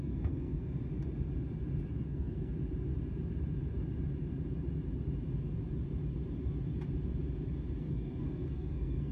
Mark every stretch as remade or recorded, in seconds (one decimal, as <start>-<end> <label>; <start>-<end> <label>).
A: 0.0-0.8 remade; 0.8-1.9 recorded; 1.9-2.5 remade; 2.5-7.8 recorded; 7.8-9.1 remade